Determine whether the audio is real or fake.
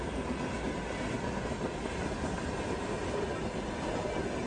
real